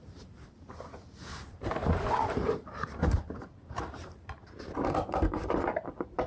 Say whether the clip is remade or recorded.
remade